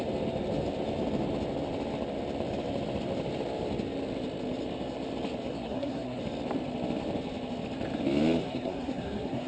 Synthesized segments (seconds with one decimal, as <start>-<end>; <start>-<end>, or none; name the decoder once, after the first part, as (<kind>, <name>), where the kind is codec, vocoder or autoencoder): 5.5-6.2 (codec, SNAC); 8.4-9.5